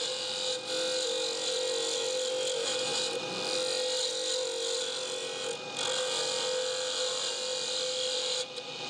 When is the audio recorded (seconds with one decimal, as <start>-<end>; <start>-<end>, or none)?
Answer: 0.0-8.9